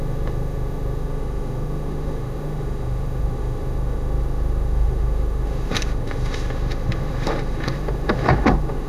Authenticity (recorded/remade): remade